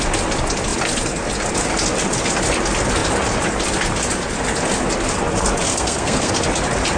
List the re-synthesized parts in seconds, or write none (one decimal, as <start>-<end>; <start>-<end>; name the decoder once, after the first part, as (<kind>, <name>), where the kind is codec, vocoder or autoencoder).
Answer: 5.7-6.3 (codec, SNAC)